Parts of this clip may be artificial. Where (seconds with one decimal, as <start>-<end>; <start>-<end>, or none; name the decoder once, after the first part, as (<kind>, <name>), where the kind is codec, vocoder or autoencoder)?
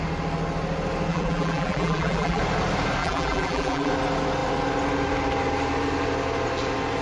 1.1-2.4 (vocoder, BigVGAN v2); 3.0-3.9